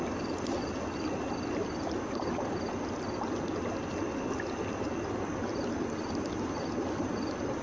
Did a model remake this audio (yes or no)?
no